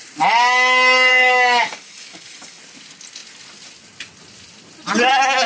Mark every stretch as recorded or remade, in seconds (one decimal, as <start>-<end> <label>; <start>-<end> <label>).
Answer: 0.0-1.1 recorded; 1.1-2.6 remade; 2.6-5.5 recorded